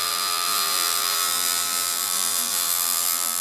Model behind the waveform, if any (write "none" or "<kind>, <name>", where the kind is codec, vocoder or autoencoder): vocoder, BigVGAN v2